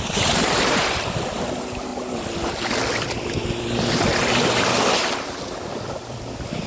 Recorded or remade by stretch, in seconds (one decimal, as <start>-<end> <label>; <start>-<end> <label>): 0.0-1.9 remade; 1.9-2.5 recorded; 2.5-4.1 remade; 4.1-5.1 recorded; 5.1-6.7 remade